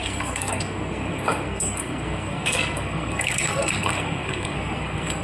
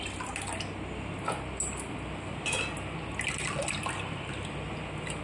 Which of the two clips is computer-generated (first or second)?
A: first